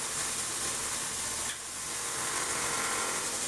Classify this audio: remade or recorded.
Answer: recorded